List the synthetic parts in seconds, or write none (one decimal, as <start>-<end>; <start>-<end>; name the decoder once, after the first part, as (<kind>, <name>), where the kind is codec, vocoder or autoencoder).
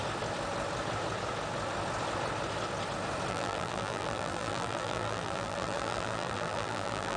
3.3-7.2 (vocoder, BigVGAN v2)